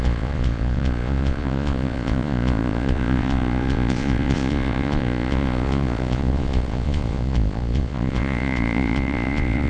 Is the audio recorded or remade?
remade